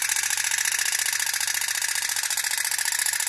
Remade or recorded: recorded